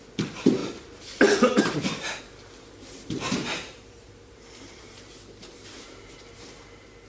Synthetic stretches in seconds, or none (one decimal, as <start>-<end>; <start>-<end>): 3.4-6.0